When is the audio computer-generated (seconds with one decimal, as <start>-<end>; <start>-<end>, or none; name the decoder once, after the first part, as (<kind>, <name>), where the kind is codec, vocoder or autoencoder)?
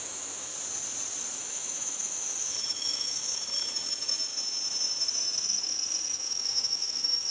0.0-0.5 (autoencoder, DAC-VAE); 1.4-4.3; 5.0-7.3